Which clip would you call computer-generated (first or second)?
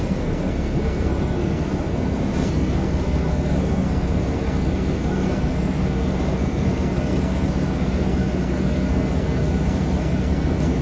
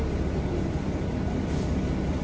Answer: first